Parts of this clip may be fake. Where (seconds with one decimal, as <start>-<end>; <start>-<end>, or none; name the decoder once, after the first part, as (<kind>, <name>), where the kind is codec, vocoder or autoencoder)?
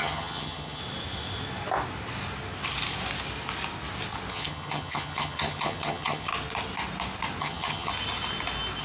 0.0-0.8 (vocoder, HiFi-GAN); 4.3-6.3; 7.4-7.9